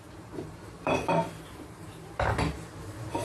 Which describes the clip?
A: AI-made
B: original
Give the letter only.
A